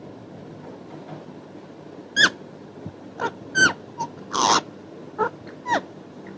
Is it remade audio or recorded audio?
recorded